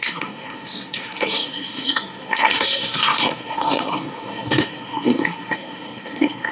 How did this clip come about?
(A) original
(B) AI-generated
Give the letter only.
B